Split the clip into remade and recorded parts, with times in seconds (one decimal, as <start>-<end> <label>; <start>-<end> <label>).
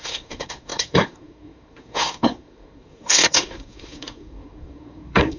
0.0-5.4 remade